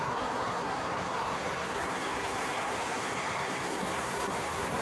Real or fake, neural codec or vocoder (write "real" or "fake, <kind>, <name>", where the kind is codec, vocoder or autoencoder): fake, codec, SNAC